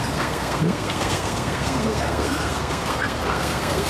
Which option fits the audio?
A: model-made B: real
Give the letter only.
A